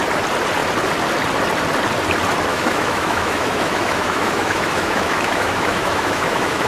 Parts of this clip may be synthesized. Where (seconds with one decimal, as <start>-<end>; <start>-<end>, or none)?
2.5-6.7